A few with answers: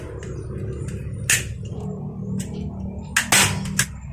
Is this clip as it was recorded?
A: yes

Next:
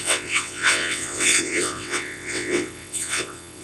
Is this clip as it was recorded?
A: no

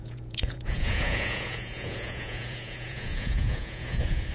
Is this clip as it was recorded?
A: no